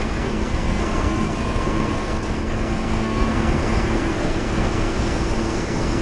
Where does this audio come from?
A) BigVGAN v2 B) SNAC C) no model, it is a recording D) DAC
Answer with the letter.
B